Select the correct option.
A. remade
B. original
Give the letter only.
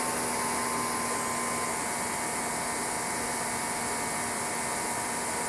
B